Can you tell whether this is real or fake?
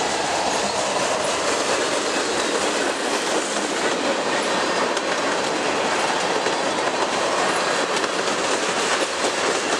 real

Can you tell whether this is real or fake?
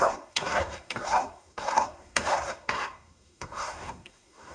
fake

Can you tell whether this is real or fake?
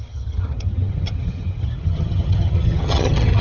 fake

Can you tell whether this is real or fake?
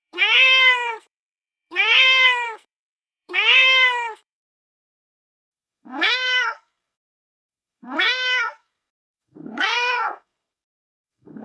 fake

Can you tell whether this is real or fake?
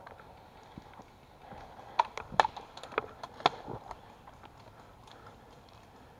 real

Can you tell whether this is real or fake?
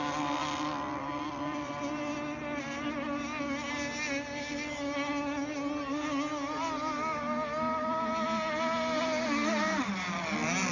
real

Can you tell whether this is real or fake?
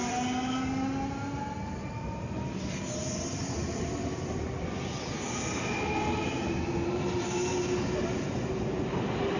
real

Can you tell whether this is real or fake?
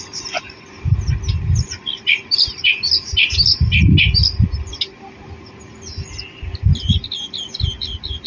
real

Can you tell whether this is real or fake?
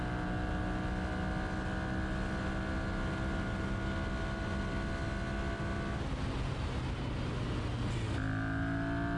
real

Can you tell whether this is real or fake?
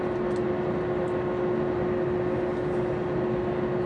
real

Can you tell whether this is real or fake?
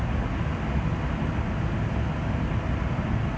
real